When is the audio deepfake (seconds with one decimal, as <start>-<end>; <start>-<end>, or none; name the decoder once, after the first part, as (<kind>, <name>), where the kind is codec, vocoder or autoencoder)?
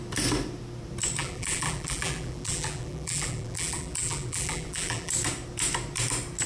1.2-5.1 (vocoder, BigVGAN v2)